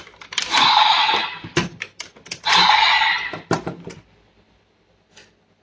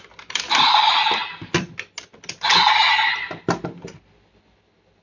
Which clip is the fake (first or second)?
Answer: first